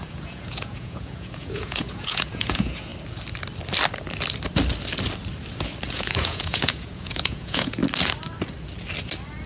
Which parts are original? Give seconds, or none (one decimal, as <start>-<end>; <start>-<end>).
2.9-5.9; 7.8-9.5